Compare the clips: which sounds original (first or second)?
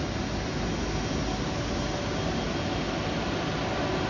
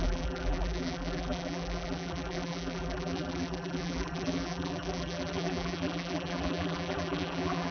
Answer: first